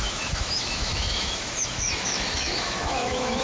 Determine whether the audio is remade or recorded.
remade